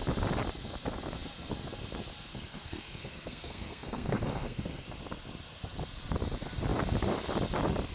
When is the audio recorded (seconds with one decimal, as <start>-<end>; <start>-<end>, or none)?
0.0-2.3; 4.8-7.9